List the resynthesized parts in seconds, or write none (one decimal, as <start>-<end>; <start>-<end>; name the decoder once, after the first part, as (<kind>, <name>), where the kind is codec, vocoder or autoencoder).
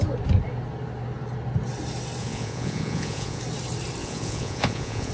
2.2-3.4 (vocoder, Vocos); 4.0-5.1